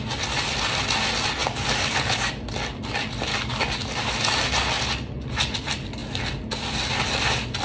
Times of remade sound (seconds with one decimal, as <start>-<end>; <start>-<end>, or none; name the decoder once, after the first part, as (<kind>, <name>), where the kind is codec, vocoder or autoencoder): 1.4-2.3 (codec, DAC); 3.3-4.1